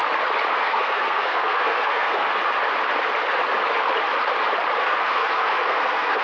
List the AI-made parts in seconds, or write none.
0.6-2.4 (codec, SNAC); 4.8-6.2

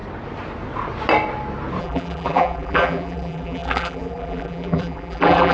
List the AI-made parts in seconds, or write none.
1.8-5.5 (vocoder, BigVGAN v2)